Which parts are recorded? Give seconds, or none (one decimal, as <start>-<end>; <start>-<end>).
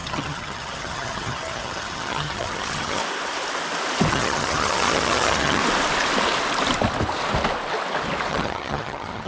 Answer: 3.0-4.1; 5.6-8.3